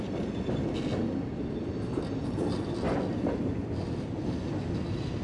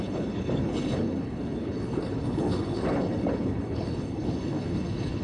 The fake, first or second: second